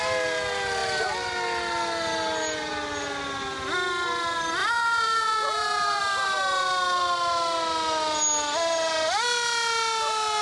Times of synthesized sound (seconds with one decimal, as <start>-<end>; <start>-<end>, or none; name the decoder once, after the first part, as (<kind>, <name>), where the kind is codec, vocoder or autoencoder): 4.6-6.0 (vocoder, Vocos)